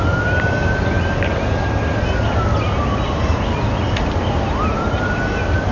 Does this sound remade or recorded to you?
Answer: recorded